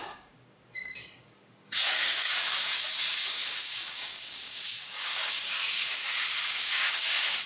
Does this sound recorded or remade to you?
remade